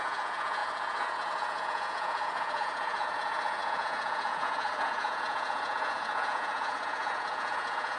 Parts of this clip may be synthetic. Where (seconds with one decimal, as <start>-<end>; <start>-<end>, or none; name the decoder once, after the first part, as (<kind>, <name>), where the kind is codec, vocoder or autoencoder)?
0.0-8.0 (vocoder, Vocos)